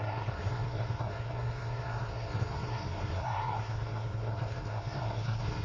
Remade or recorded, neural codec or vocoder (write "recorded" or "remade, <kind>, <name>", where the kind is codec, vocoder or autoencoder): remade, codec, SNAC